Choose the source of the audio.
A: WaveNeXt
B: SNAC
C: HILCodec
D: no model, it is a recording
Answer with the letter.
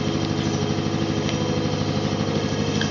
D